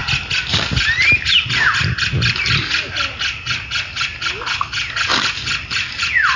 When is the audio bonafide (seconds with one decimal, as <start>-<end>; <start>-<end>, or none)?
0.0-6.4